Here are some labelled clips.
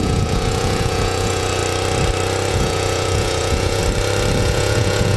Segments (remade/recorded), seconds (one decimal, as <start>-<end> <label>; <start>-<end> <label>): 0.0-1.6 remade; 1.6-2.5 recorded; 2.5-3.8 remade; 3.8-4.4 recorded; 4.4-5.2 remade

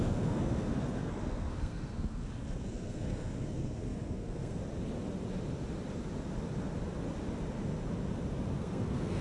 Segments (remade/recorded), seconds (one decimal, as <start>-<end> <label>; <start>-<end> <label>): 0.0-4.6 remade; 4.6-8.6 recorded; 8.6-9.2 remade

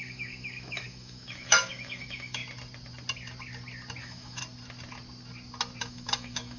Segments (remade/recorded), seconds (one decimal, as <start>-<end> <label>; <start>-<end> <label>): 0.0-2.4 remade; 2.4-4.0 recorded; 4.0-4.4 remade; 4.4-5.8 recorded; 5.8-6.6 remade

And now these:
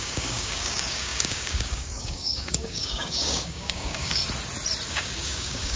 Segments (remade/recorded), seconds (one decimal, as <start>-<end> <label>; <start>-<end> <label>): 0.0-4.2 remade; 4.2-4.9 recorded; 4.9-5.8 remade